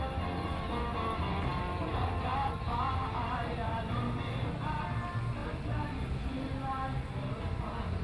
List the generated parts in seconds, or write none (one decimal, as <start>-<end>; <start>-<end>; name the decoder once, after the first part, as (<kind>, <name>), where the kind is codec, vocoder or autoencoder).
none